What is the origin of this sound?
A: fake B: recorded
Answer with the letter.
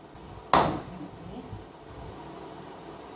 B